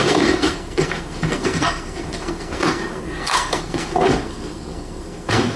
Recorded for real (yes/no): no